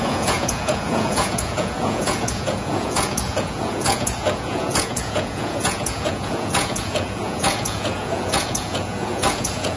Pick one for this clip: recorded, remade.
remade